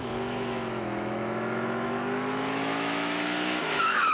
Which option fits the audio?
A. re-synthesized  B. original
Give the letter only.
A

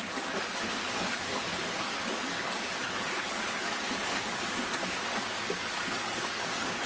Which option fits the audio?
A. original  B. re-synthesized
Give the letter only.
B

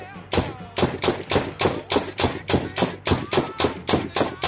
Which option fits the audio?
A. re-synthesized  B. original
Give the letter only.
B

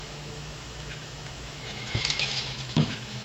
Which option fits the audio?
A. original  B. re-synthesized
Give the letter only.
B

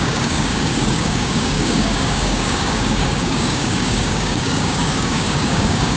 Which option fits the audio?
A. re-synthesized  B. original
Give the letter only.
A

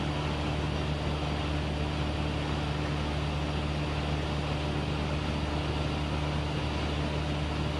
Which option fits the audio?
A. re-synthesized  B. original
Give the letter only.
B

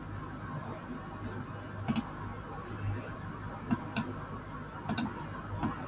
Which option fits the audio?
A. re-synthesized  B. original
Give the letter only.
B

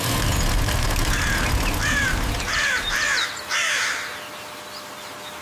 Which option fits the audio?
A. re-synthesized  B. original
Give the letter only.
B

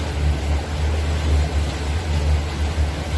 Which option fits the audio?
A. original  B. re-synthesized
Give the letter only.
A